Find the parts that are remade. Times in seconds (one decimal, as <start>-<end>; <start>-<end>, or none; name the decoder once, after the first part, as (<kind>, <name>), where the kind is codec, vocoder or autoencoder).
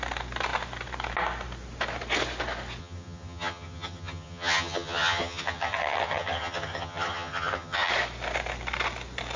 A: 2.8-7.9 (vocoder, HiFi-GAN)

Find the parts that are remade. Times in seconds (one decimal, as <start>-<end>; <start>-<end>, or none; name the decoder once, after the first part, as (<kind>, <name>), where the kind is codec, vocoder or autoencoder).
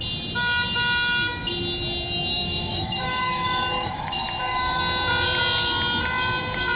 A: 2.3-4.8 (autoencoder, DAC-VAE)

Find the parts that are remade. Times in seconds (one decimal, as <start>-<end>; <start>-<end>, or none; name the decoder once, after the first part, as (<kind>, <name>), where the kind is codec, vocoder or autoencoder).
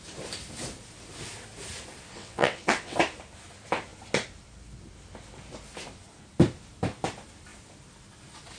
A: 2.1-3.0 (vocoder, WaveNeXt)